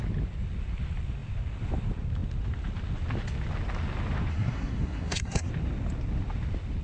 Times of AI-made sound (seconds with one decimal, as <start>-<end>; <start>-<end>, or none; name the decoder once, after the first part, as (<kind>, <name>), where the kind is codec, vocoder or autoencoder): 4.3-5.5 (codec, SNAC)